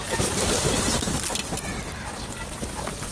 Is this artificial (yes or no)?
no